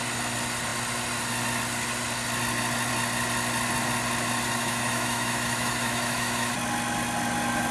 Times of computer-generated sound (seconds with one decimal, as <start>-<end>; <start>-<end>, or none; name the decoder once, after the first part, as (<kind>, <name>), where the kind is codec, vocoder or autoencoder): 4.6-6.5 (autoencoder, DAC-VAE)